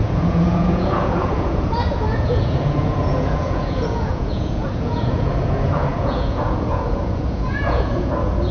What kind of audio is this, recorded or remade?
remade